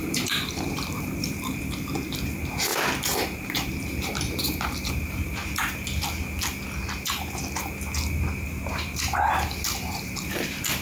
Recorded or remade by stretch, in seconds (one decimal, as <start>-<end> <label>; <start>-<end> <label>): 0.0-2.7 remade; 2.7-3.4 recorded; 3.4-5.4 remade; 5.4-8.2 recorded; 8.2-10.8 remade